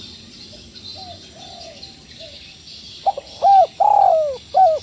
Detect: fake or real real